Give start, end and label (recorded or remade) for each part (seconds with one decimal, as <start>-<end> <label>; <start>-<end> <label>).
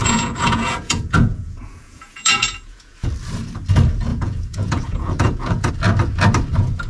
0.0-3.1 remade; 3.1-4.1 recorded; 4.1-5.7 remade; 5.7-6.9 recorded